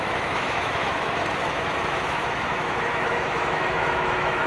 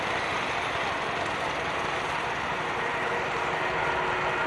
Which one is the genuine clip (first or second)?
second